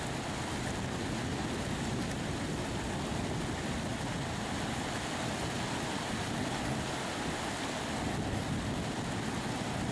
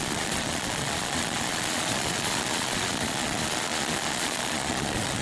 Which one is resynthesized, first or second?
second